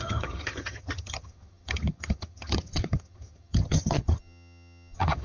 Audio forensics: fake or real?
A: fake